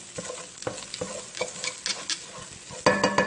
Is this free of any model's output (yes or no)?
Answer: yes